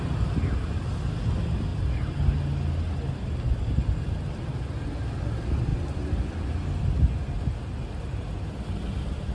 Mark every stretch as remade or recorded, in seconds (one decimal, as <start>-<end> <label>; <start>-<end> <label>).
0.0-9.3 recorded